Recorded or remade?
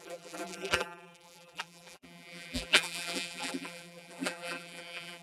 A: remade